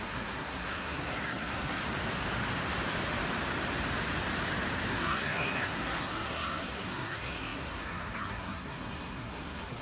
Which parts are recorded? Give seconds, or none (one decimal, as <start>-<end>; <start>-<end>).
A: 1.8-4.9